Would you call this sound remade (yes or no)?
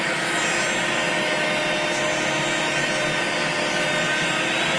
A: no